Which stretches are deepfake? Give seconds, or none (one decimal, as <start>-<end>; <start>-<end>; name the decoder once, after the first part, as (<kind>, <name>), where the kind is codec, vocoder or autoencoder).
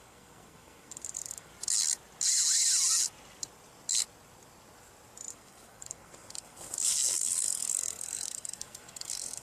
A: 0.0-1.5 (codec, SNAC); 5.3-9.4